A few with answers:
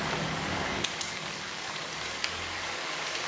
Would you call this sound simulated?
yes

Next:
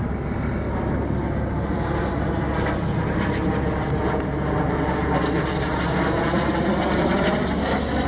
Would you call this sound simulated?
no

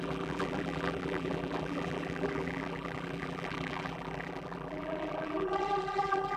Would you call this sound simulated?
yes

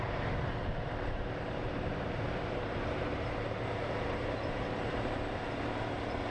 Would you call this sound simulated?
yes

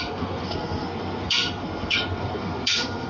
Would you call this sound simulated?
yes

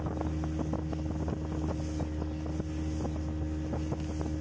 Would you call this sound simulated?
no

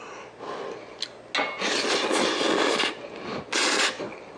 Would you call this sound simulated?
no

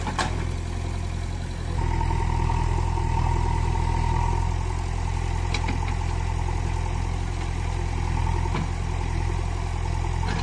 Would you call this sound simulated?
no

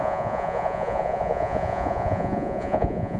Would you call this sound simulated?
yes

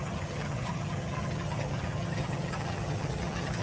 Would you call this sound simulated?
yes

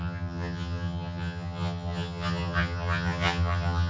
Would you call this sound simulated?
yes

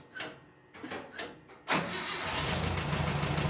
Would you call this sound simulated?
no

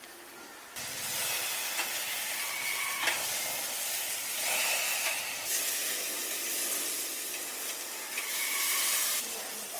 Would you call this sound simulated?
no